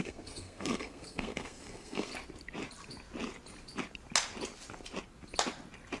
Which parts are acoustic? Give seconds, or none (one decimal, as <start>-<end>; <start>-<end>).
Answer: 2.1-6.0